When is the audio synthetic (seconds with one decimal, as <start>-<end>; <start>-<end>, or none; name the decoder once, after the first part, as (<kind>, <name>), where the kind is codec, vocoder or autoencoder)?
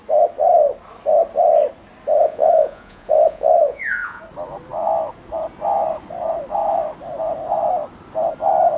2.2-4.2 (vocoder, Vocos)